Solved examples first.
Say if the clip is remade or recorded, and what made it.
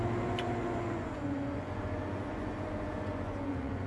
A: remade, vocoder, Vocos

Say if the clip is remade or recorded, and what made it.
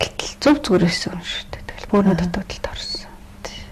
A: recorded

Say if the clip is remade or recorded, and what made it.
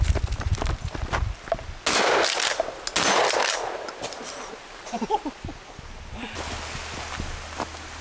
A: recorded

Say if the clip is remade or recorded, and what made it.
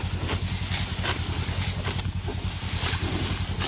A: recorded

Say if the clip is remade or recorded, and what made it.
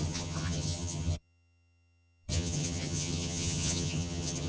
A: remade, vocoder, HiFi-GAN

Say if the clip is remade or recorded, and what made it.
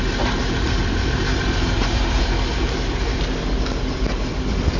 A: recorded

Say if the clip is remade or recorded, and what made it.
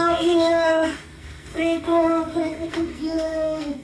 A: remade, codec, SNAC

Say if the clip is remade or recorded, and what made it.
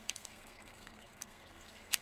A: remade, codec, SNAC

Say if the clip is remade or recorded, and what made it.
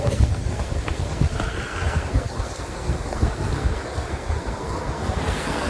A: remade, codec, SNAC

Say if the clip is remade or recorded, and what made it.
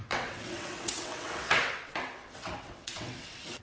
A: remade, vocoder, WaveNeXt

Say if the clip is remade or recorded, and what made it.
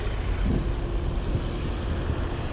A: recorded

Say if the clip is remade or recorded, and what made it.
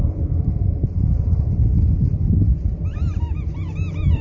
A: recorded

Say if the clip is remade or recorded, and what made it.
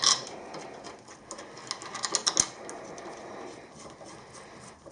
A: recorded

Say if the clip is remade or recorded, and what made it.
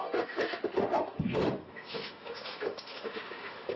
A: remade, autoencoder, DAC-VAE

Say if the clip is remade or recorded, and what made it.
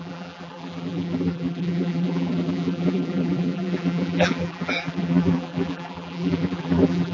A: remade, vocoder, BigVGAN v2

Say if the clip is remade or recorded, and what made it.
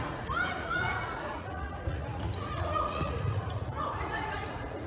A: remade, vocoder, Vocos